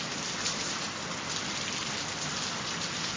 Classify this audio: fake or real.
real